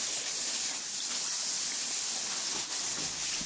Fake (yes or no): no